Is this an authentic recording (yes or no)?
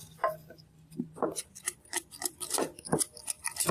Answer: no